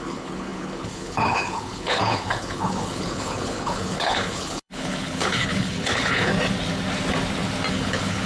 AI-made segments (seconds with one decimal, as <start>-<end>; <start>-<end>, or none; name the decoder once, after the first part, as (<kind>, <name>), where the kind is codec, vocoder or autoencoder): 0.0-6.3 (codec, HILCodec); 7.7-8.3